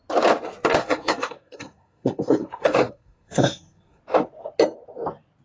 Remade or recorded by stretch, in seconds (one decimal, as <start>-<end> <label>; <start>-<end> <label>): 0.0-0.8 recorded; 0.8-4.0 remade; 4.0-5.4 recorded

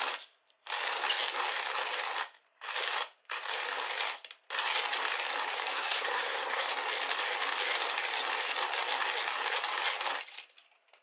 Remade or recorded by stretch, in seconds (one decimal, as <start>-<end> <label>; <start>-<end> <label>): 0.0-5.7 recorded; 5.7-6.7 remade; 6.7-11.0 recorded